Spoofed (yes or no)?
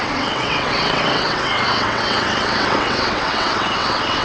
yes